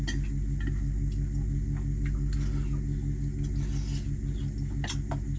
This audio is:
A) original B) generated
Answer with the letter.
A